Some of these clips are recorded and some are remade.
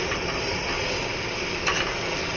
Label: recorded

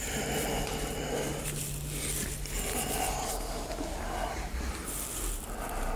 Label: recorded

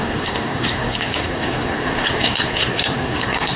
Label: remade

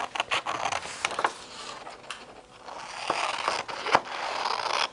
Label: recorded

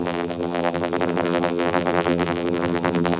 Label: remade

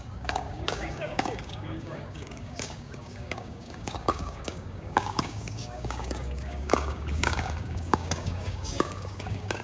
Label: remade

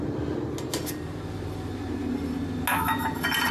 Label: recorded